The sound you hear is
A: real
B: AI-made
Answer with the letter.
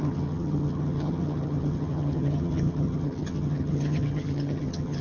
B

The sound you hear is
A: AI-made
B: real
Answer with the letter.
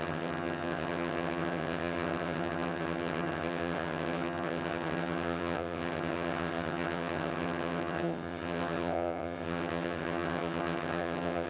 A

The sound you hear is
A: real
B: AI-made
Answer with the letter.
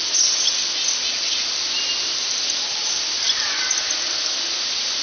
A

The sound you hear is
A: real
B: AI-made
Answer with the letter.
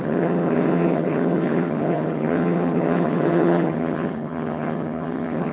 B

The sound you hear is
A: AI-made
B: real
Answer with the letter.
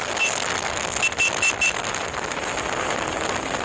B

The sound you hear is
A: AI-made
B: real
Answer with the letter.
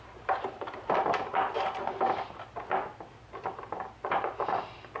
B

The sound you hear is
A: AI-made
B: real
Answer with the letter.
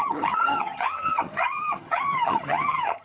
A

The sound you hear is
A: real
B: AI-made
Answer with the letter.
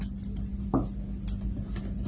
A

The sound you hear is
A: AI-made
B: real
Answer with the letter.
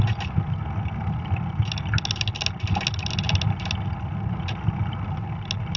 B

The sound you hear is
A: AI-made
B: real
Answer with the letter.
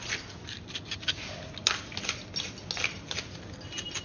B